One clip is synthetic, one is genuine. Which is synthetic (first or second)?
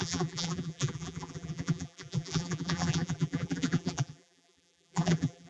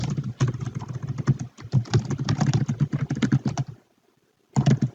first